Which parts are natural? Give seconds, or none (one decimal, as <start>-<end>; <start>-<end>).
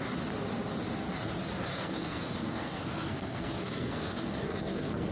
0.0-1.7